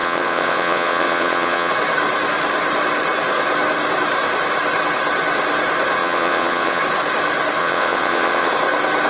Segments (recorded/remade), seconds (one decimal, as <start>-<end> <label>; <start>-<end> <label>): 0.0-1.7 remade; 1.7-6.0 recorded; 6.0-6.8 remade; 6.8-7.6 recorded; 7.6-8.5 remade; 8.5-9.1 recorded